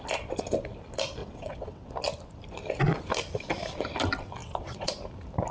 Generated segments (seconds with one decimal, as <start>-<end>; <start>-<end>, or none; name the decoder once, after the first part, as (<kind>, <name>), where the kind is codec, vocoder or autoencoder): 1.2-1.9 (vocoder, WaveNeXt); 4.4-4.9